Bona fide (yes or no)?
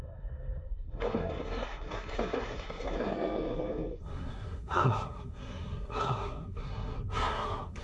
no